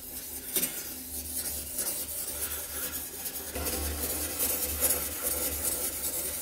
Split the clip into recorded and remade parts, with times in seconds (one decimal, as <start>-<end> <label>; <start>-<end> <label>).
0.0-6.4 recorded